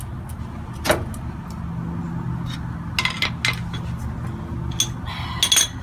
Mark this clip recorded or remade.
recorded